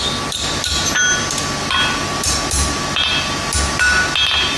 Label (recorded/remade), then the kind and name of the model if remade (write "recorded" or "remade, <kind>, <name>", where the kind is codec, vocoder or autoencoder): recorded